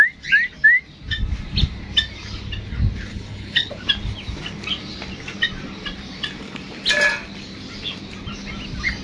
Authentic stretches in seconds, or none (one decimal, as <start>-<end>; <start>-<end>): 0.0-3.1; 3.7-9.0